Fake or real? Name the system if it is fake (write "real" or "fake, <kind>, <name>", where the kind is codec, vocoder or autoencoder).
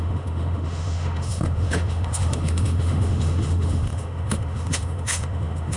fake, autoencoder, DAC-VAE